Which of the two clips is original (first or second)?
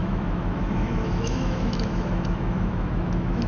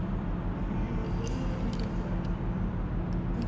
second